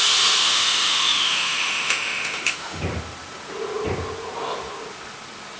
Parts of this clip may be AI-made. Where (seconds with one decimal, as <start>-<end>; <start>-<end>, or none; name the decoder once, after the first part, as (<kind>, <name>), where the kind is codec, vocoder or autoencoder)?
0.4-2.8 (autoencoder, DAC-VAE)